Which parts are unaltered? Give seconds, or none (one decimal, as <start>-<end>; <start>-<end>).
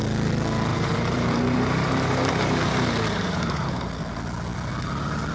0.0-0.7; 3.9-5.3